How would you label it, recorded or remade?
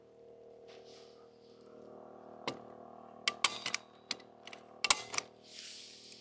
recorded